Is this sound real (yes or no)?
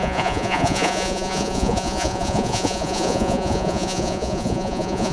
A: no